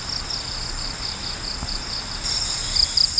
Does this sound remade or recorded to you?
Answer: recorded